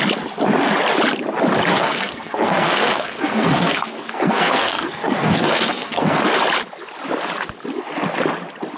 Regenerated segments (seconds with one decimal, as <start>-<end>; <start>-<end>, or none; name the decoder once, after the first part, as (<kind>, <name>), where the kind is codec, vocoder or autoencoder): 1.7-6.2 (codec, SNAC)

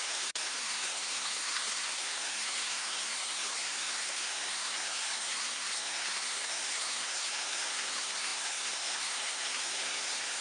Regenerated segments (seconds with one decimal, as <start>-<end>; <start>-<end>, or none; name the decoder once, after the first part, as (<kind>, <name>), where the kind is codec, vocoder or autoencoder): 0.0-10.4 (codec, SNAC)

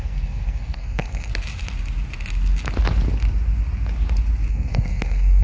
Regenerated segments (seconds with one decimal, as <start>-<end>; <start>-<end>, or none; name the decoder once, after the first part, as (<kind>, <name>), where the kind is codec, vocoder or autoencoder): 0.0-1.3 (codec, SNAC); 4.5-5.4

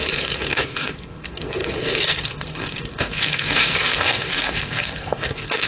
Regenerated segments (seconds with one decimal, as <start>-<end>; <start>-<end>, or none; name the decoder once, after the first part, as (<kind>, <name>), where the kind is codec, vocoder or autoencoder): 0.0-5.7 (codec, SNAC)

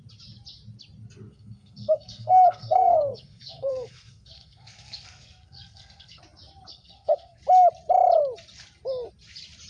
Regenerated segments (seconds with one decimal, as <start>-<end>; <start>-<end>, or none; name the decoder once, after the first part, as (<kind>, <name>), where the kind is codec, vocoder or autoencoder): 1.3-6.2 (codec, SNAC); 6.7-7.4

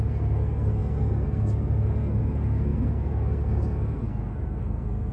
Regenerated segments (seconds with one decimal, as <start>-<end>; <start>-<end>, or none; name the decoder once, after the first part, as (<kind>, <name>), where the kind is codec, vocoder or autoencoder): 0.0-5.1 (codec, SNAC)

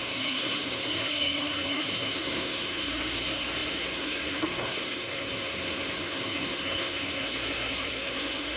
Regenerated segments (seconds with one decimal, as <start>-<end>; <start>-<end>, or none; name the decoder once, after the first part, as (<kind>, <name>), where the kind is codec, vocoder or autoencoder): 0.0-8.6 (codec, SNAC)

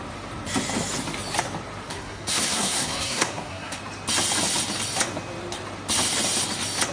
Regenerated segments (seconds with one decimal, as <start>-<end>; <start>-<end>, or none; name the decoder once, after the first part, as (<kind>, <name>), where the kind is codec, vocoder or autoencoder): 1.9-3.8 (codec, SNAC)